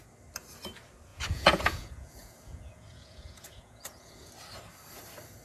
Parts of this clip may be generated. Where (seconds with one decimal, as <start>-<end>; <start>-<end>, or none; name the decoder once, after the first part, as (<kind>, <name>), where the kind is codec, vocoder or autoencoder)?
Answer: 1.1-4.3 (vocoder, Vocos)